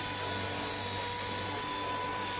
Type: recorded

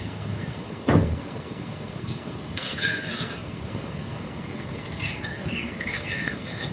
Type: remade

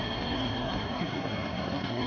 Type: remade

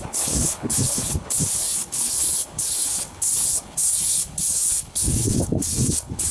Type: remade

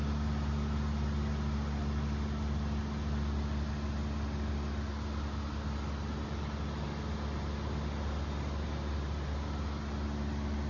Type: recorded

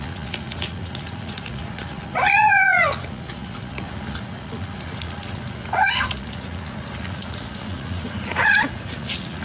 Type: remade